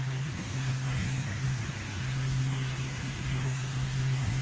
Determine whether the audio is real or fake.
fake